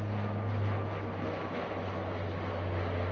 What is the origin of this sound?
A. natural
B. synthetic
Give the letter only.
A